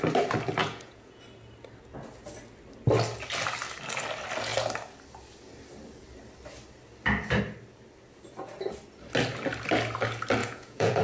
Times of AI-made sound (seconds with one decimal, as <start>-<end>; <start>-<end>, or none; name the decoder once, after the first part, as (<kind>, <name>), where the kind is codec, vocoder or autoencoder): 0.6-1.2 (vocoder, Vocos); 10.4-11.0